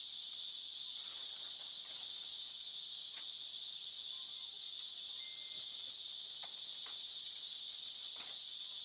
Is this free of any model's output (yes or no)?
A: yes